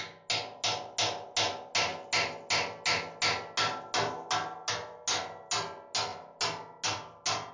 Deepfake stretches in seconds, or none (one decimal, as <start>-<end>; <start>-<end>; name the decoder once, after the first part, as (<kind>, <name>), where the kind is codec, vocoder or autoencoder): none